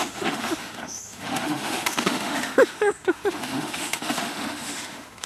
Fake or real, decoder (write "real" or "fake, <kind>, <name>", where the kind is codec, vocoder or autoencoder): fake, autoencoder, DAC-VAE